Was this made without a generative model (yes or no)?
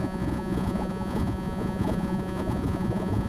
no